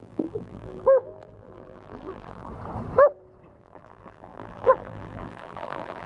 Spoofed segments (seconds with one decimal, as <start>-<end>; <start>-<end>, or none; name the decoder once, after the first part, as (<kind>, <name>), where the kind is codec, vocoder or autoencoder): 0.0-2.5 (vocoder, BigVGAN v2); 3.6-6.1